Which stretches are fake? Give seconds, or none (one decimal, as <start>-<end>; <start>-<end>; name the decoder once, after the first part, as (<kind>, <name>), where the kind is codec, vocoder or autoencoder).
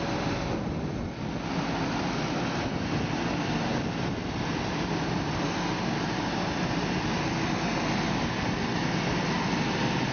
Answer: none